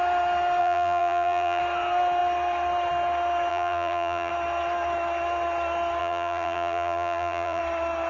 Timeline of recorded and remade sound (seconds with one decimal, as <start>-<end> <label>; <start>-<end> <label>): 0.0-0.6 recorded; 0.6-1.6 remade; 1.6-3.5 recorded; 3.5-4.3 remade; 4.3-6.0 recorded; 6.0-7.6 remade; 7.6-8.1 recorded

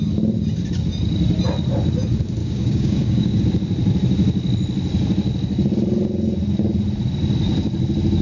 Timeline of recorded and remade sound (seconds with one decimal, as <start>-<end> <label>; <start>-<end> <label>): 0.0-2.4 recorded; 2.4-3.4 remade; 3.4-8.2 recorded